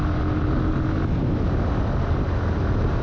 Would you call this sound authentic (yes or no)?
yes